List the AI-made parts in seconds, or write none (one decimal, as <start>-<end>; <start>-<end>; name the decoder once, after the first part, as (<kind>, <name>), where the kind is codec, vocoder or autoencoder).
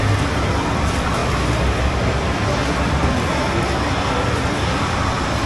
none